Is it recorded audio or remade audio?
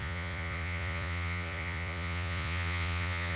remade